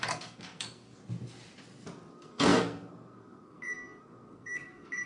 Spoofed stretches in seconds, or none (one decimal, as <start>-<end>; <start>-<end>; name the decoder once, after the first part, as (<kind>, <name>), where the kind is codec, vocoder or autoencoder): 0.0-1.0 (codec, SNAC); 2.1-5.1